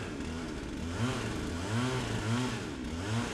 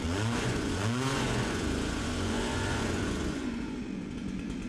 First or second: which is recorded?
first